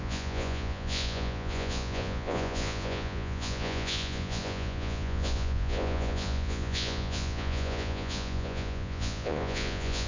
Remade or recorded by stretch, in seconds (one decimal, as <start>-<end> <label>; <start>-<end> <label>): 0.0-10.1 remade